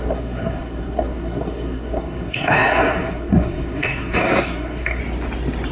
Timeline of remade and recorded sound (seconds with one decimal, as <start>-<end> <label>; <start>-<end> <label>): 0.0-5.0 remade; 5.0-5.7 recorded